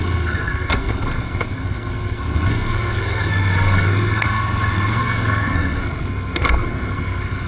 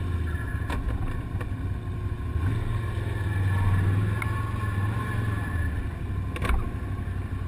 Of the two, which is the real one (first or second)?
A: second